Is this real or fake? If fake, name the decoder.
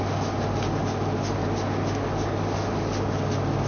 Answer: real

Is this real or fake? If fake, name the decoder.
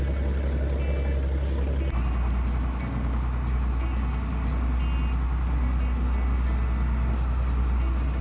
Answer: real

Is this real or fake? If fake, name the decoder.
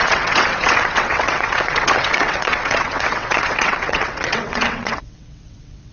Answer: fake, vocoder, WaveNeXt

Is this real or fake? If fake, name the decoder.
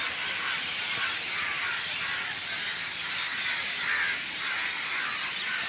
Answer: real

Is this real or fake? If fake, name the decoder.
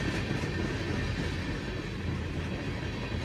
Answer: real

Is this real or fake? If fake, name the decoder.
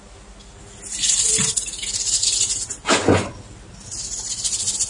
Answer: real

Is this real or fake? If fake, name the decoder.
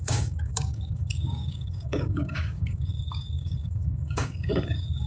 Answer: fake, codec, DAC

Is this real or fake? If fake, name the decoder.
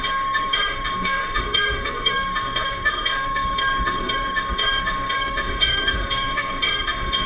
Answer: fake, autoencoder, DAC-VAE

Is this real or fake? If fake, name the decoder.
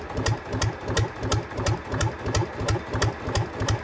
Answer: real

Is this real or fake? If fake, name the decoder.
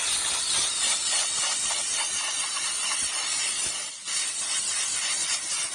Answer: real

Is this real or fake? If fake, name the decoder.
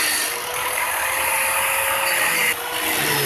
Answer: real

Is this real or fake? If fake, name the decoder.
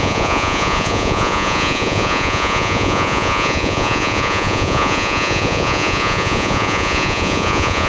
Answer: fake, vocoder, Vocos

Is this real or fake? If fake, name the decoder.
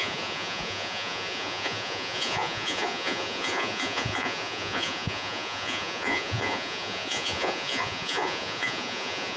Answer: fake, vocoder, Vocos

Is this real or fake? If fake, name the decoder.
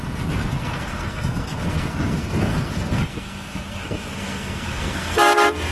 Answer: fake, codec, SNAC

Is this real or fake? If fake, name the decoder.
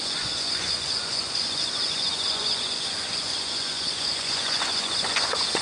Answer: fake, vocoder, Vocos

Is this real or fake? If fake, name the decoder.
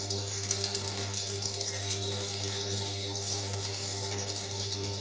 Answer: fake, codec, DAC